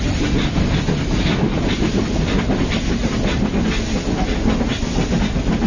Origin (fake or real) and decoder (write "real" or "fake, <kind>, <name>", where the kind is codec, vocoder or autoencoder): real